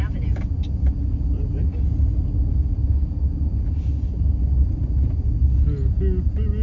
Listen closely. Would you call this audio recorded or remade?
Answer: recorded